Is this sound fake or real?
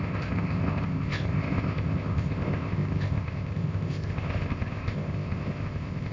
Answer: fake